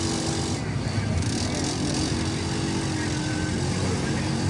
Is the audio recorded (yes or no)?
yes